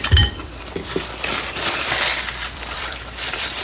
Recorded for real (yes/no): no